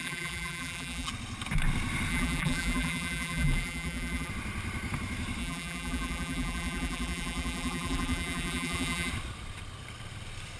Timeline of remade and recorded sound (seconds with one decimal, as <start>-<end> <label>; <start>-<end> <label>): 0.0-1.1 remade; 1.1-2.1 recorded; 2.1-4.3 remade; 4.3-5.4 recorded; 5.4-9.1 remade; 9.1-10.6 recorded